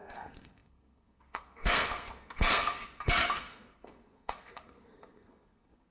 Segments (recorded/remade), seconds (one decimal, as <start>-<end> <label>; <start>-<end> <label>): 0.0-5.9 remade